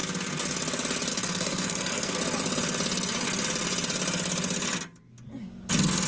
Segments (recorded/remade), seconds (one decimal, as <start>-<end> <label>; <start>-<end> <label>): 0.0-1.1 recorded; 1.1-2.2 remade; 2.2-6.1 recorded